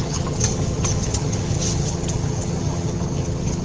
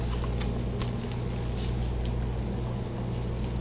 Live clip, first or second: second